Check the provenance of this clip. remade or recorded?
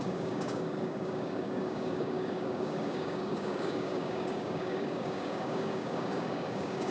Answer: remade